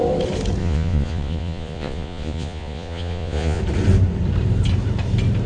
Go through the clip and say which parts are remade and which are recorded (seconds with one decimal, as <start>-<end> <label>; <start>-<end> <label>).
0.0-0.6 recorded; 0.6-3.6 remade; 3.6-5.5 recorded